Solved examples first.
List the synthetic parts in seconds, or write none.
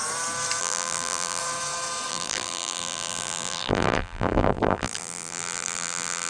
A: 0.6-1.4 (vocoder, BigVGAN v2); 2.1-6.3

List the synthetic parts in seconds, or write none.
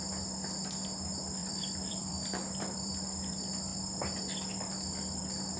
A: 1.4-2.9 (vocoder, BigVGAN v2)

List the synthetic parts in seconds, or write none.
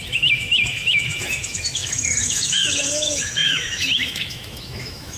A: 0.0-5.2 (autoencoder, DAC-VAE)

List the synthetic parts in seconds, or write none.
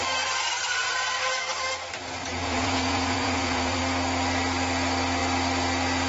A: 2.3-3.8 (vocoder, Vocos)